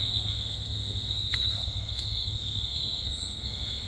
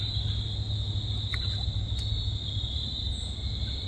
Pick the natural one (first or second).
second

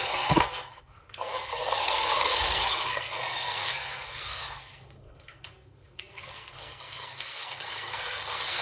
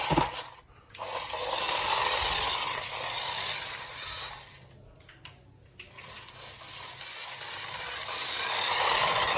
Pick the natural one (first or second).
second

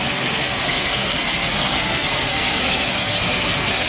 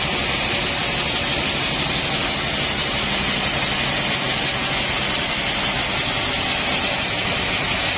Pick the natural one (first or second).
second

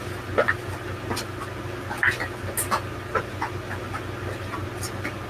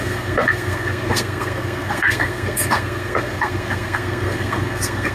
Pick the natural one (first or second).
first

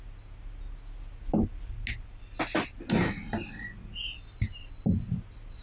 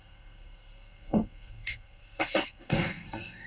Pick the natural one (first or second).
first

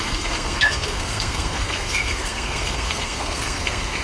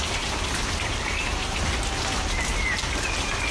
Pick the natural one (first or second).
second